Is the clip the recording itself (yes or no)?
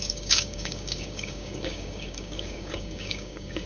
no